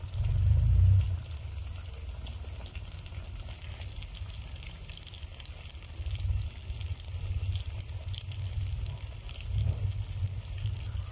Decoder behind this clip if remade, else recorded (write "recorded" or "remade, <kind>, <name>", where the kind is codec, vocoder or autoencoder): recorded